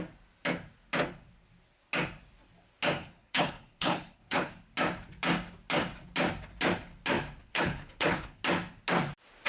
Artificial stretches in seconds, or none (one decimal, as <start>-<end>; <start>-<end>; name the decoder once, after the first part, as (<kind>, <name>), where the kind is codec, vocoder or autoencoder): 3.0-4.5 (codec, HILCodec); 7.4-8.4